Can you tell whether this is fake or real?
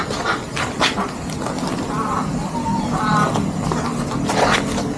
real